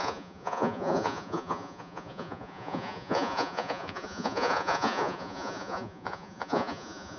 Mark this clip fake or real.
fake